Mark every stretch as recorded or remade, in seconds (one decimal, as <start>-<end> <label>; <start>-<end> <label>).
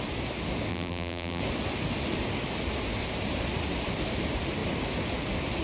0.0-0.7 recorded; 0.7-1.4 remade; 1.4-5.6 recorded